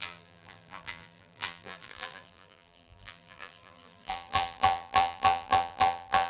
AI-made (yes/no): yes